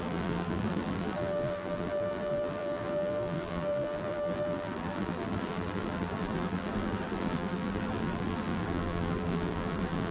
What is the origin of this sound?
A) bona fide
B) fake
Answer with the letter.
B